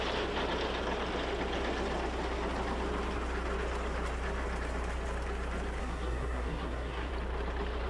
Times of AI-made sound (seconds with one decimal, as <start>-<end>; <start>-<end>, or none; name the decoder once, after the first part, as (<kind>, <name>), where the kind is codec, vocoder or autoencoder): 5.8-7.1 (codec, SNAC)